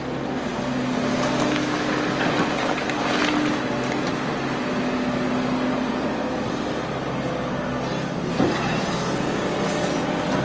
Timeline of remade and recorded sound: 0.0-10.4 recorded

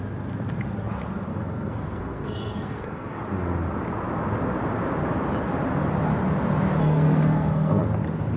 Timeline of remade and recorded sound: 0.0-1.3 recorded; 1.3-3.2 remade; 3.2-6.8 recorded; 6.8-7.8 remade; 7.8-8.4 recorded